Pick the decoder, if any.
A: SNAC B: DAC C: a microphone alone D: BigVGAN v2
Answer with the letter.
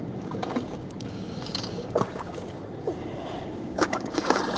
B